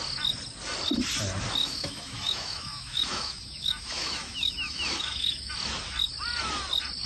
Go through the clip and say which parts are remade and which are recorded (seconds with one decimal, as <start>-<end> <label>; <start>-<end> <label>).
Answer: 0.0-1.6 recorded; 1.6-5.5 remade; 5.5-7.1 recorded